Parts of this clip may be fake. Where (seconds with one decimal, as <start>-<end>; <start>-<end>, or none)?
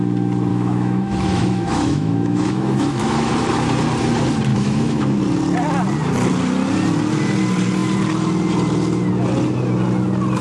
0.5-3.3; 4.5-5.2